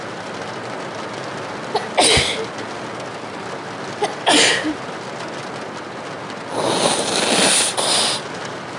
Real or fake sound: real